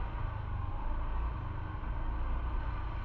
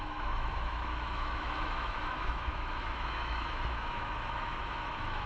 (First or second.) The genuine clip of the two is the first